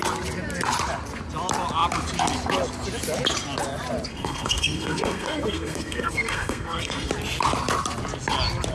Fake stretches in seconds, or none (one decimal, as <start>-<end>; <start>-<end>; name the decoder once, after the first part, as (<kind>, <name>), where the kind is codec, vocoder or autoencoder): 4.1-7.1 (codec, SNAC)